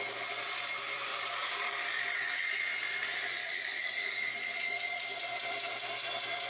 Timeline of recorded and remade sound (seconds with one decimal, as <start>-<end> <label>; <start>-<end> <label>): 0.0-1.1 recorded; 1.1-2.6 remade; 2.6-3.4 recorded; 3.4-4.5 remade; 4.5-6.5 recorded